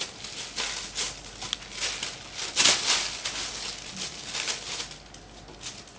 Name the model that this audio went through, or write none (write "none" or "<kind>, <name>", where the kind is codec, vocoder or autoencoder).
none